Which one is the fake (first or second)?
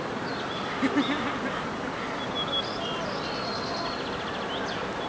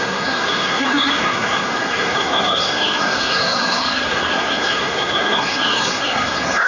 second